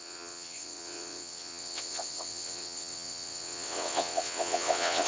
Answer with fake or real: fake